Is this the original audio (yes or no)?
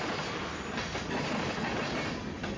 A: yes